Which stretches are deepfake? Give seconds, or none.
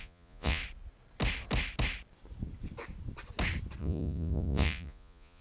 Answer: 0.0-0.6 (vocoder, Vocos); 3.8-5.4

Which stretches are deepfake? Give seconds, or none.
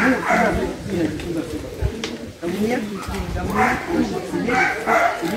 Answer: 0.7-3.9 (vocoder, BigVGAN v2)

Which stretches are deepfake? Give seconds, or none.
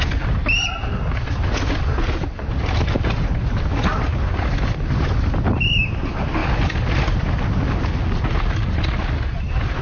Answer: none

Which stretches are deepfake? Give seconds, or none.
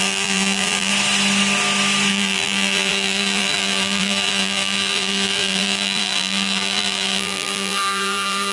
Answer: 0.0-0.9 (vocoder, BigVGAN v2); 2.1-8.5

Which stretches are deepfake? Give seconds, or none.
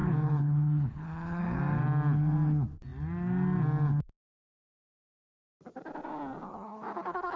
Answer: 0.0-1.6 (codec, HILCodec); 6.5-7.4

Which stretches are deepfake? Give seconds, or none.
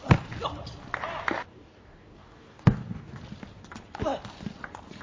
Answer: 1.5-3.1 (codec, DAC)